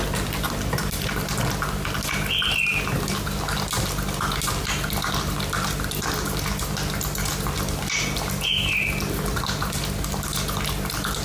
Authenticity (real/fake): real